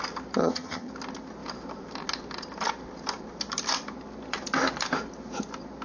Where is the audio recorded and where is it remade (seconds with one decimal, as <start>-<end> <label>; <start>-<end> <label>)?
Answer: 0.0-0.4 recorded; 0.4-0.9 remade; 0.9-5.8 recorded